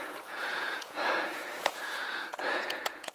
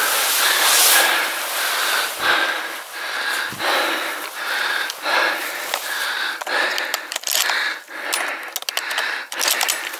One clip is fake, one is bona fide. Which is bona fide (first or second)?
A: second